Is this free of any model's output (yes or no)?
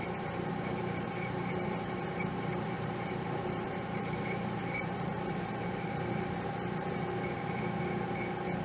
no